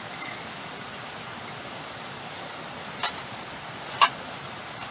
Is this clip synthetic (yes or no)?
no